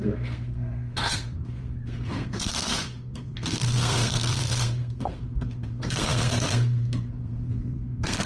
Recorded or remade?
remade